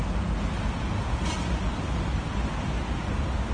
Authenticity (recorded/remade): recorded